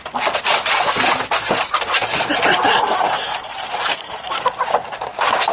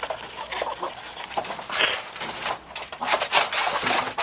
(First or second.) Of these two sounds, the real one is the second